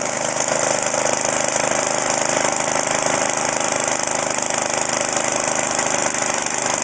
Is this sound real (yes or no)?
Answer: yes